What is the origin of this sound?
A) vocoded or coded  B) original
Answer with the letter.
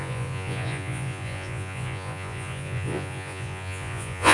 A